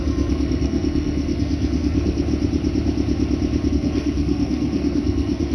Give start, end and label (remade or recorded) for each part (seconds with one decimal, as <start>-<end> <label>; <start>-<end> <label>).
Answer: 0.0-2.3 remade; 2.3-3.7 recorded; 3.7-5.5 remade